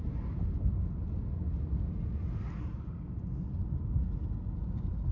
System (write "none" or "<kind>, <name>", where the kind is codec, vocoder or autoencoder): none